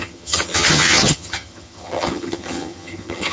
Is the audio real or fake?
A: fake